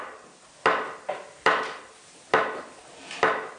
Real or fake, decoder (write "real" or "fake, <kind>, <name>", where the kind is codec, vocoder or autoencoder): real